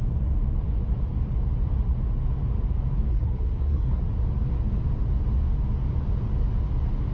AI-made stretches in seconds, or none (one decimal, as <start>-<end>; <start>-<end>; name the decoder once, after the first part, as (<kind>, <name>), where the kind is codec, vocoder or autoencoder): 3.1-4.0 (codec, SNAC)